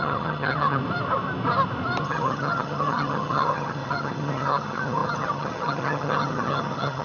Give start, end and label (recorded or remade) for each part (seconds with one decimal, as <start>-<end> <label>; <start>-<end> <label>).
0.0-0.8 remade; 0.8-2.0 recorded; 2.0-7.0 remade